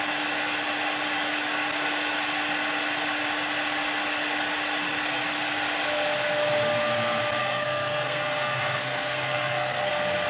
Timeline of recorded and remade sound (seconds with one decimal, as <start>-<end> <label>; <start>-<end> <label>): 0.0-7.4 recorded; 7.4-9.9 remade; 9.9-10.3 recorded